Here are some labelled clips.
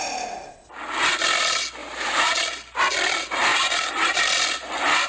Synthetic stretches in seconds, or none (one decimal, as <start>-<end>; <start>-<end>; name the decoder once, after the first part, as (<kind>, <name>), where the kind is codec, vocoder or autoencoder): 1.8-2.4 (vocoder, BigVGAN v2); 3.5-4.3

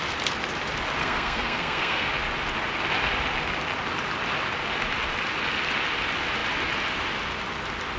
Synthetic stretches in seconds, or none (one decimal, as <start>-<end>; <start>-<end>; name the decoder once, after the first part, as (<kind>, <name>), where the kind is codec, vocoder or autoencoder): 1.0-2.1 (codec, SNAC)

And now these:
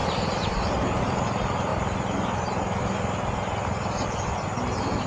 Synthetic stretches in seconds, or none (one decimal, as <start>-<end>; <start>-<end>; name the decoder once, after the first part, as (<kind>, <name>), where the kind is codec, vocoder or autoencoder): none